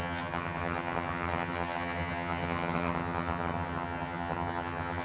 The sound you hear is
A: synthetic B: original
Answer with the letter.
A